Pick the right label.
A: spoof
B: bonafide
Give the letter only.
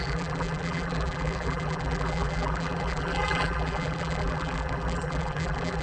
A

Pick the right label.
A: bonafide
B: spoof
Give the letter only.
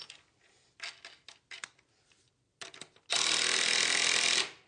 A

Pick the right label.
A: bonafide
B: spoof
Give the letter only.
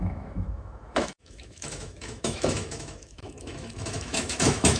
B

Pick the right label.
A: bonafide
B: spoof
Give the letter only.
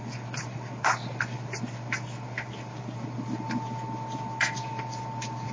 A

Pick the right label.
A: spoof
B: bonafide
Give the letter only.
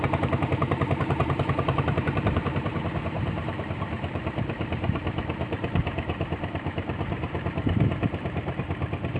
A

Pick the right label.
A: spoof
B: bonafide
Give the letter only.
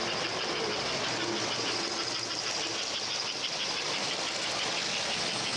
B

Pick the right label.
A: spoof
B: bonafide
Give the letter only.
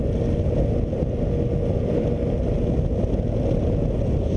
B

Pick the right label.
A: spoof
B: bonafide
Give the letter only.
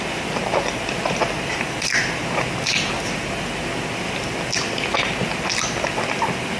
B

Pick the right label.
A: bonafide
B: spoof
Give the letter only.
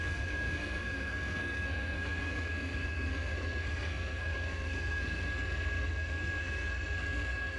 B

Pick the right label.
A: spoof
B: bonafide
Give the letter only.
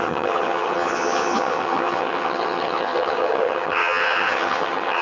A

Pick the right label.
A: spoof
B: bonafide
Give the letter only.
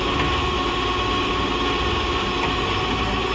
B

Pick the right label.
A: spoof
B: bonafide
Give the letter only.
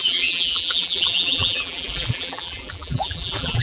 A